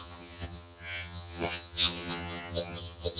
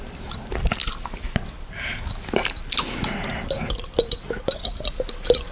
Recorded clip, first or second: second